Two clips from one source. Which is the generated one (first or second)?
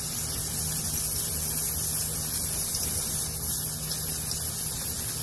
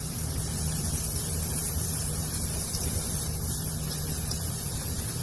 second